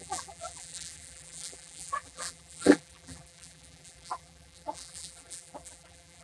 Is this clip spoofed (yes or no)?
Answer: yes